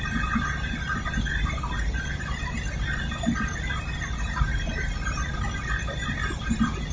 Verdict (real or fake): real